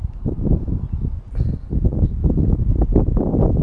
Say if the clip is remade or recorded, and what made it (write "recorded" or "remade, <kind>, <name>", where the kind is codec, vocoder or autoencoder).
recorded